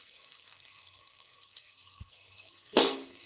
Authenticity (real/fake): fake